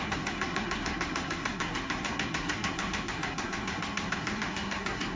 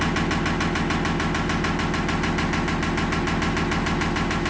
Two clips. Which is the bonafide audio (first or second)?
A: second